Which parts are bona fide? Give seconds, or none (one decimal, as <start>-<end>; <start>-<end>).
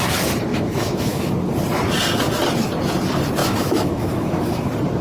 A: 0.0-0.5; 1.3-3.4; 4.6-5.0